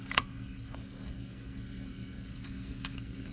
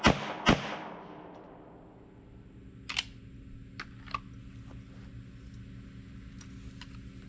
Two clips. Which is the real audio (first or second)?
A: second